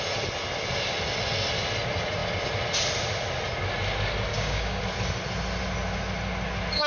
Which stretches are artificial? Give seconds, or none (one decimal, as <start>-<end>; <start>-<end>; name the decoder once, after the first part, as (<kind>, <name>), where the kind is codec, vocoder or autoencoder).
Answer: 4.3-4.8 (codec, DAC)